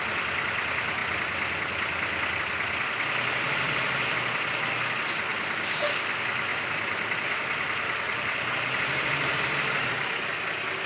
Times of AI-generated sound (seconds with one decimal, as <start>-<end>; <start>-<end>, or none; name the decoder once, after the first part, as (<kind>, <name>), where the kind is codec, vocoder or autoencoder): 5.3-5.9 (vocoder, BigVGAN v2); 6.5-10.3